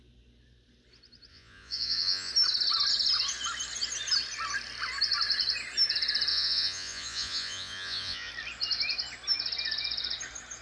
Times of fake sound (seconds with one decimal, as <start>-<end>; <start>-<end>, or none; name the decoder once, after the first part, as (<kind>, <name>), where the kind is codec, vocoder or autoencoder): 1.3-2.3 (vocoder, Vocos); 6.3-8.3